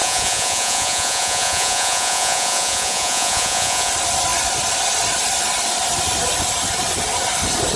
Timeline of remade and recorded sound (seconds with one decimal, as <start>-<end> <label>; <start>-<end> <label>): 0.0-3.9 remade; 3.9-7.8 recorded